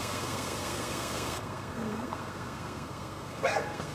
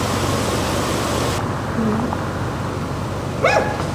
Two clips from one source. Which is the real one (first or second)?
second